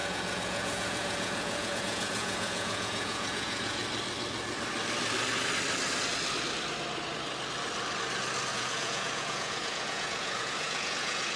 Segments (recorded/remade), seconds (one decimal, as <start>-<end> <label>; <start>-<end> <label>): 0.0-3.8 remade; 3.8-8.5 recorded; 8.5-11.4 remade